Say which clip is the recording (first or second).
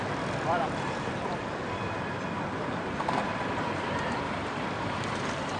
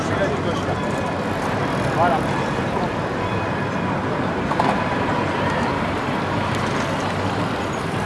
second